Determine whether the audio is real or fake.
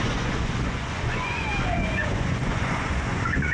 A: fake